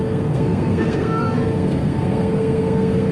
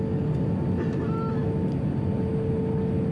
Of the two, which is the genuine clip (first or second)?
second